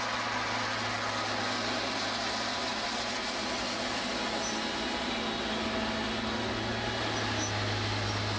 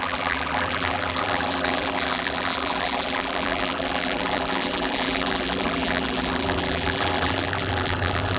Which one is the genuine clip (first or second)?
first